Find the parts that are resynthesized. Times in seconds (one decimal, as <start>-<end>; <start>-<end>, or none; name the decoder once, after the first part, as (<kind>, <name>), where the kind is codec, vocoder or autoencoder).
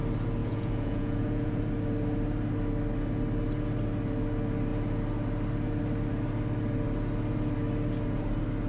0.4-1.6 (vocoder, Vocos)